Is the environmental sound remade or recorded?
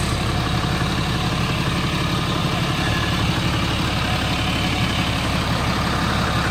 recorded